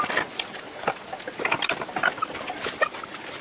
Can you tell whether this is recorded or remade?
recorded